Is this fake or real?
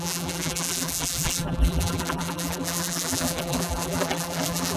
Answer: fake